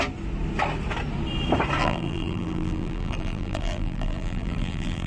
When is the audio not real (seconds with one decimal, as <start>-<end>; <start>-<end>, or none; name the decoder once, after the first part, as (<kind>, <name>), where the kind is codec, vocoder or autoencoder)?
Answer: 1.8-5.1 (vocoder, BigVGAN v2)

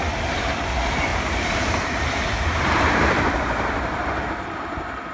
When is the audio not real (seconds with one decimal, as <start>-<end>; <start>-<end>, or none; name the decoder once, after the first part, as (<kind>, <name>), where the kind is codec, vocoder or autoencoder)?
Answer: 1.1-4.2 (vocoder, BigVGAN v2)

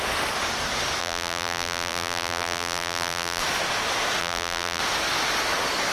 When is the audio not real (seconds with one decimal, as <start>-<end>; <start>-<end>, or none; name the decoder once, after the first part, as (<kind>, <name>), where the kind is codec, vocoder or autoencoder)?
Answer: 1.0-3.4 (vocoder, BigVGAN v2); 4.2-4.8

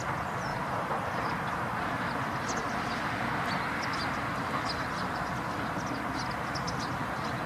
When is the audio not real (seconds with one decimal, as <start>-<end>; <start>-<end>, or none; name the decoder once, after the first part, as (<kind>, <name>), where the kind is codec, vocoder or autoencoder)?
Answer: 0.5-1.4 (vocoder, BigVGAN v2)

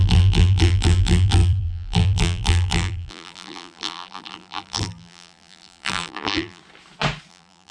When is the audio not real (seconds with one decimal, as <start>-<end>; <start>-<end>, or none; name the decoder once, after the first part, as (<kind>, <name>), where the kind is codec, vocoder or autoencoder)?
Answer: 0.0-6.6 (vocoder, BigVGAN v2); 7.3-7.7

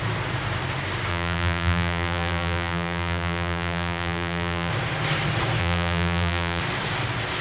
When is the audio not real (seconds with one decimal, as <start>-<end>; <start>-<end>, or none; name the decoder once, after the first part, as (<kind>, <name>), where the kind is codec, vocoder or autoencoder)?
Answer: 1.1-4.7 (vocoder, BigVGAN v2); 5.6-6.6